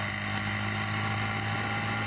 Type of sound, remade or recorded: recorded